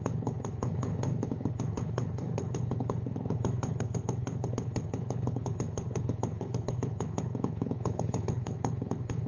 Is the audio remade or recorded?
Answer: remade